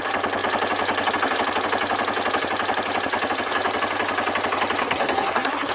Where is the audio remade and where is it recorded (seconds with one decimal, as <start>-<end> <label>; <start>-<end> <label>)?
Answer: 0.0-4.8 recorded; 4.8-5.7 remade